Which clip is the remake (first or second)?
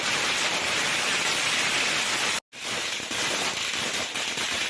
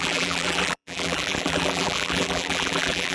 second